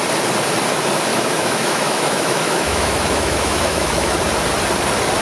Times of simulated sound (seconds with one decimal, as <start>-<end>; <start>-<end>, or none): 1.1-4.2

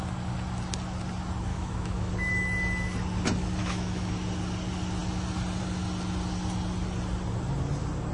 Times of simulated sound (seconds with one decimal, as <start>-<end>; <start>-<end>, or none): 1.5-2.1; 3.6-4.1

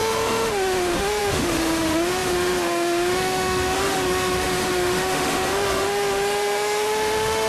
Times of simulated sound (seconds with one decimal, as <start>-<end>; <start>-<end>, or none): 0.0-7.5